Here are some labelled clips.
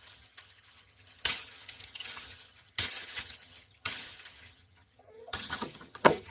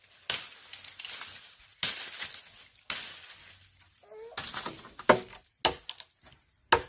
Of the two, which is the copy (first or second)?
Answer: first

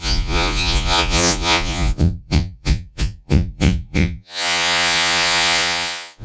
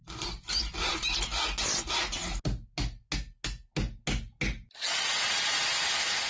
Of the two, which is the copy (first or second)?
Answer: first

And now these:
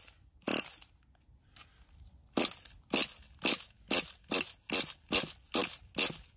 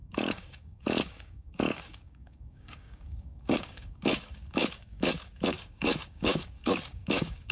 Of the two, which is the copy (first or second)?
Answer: second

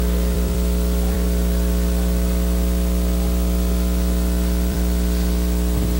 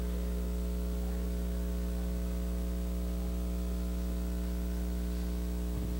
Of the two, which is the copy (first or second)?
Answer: first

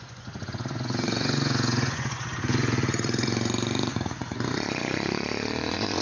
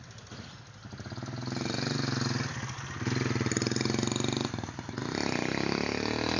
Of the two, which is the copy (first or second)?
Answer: first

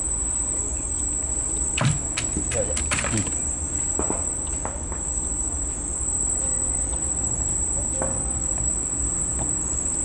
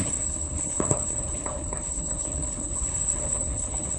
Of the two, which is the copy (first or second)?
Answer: second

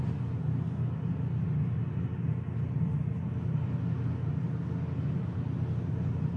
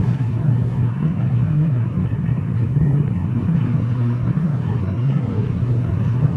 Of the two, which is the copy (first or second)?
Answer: second